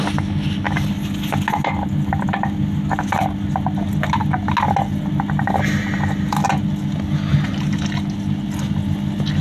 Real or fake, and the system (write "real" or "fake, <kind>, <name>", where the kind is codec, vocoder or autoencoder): real